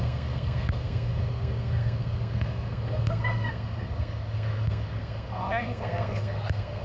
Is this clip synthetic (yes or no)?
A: yes